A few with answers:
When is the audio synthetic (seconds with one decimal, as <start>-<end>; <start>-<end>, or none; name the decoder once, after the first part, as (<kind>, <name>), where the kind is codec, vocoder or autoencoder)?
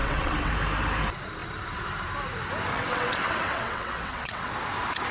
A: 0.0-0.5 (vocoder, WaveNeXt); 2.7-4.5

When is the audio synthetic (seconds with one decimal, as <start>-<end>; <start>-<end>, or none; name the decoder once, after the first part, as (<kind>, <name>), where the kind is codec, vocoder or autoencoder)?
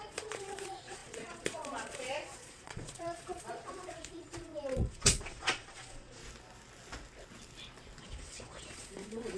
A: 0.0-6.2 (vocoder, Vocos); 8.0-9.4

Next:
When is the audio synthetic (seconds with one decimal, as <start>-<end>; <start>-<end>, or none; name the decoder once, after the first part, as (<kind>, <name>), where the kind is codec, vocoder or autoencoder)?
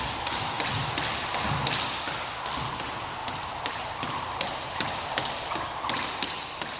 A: 3.2-5.6 (vocoder, BigVGAN v2)